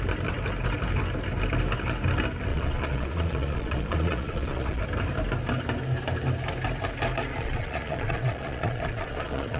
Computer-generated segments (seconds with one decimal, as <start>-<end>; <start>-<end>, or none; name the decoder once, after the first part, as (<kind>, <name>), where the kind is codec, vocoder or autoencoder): 2.5-4.8 (vocoder, Vocos); 7.3-9.6